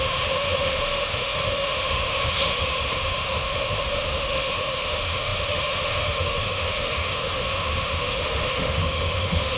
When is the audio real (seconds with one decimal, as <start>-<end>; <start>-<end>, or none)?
none